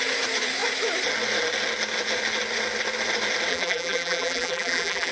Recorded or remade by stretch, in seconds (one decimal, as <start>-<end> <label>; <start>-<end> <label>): 0.0-3.5 recorded; 3.5-5.1 remade